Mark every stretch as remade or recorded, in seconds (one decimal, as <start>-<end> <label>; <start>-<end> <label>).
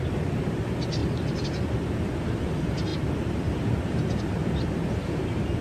0.0-5.6 recorded